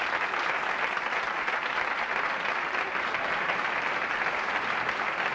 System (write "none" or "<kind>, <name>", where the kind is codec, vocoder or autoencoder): none